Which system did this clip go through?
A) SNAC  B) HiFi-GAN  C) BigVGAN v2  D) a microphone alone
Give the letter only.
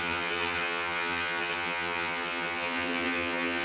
B